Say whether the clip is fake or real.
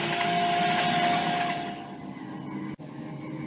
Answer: real